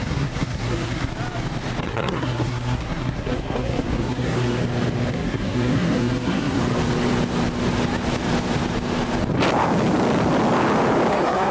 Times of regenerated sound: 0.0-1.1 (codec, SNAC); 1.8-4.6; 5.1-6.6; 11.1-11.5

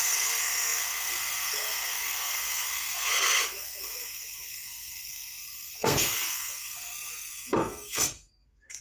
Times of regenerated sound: 0.0-8.8 (codec, SNAC)